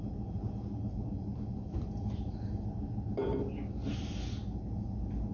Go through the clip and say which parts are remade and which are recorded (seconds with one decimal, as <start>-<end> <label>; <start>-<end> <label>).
0.0-5.3 recorded